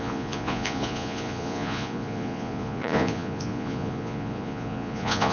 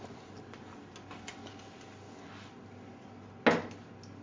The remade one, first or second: first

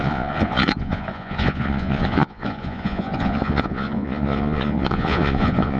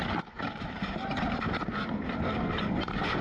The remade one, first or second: first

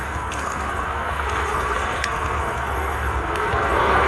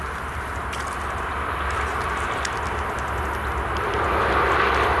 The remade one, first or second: first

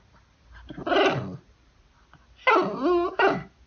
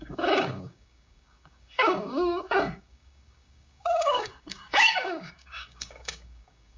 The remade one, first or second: second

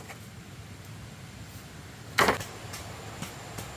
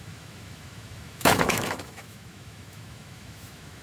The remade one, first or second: second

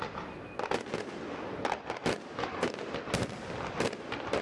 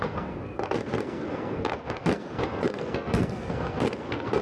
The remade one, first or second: second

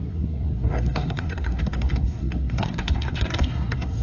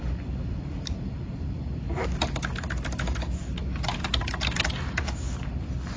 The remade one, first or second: first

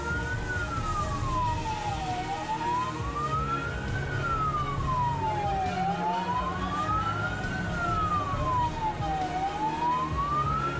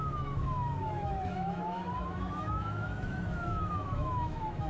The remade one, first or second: second